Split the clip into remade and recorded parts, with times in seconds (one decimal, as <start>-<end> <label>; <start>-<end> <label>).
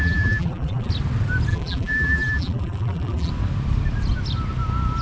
0.0-0.9 remade; 0.9-1.5 recorded; 1.5-3.3 remade; 3.3-5.0 recorded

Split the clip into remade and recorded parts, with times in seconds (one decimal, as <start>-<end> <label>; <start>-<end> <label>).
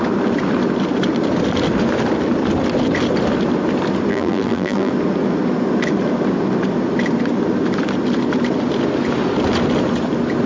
0.0-4.1 recorded; 4.1-4.9 remade; 4.9-10.5 recorded